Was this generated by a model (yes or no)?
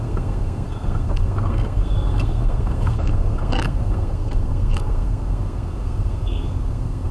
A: yes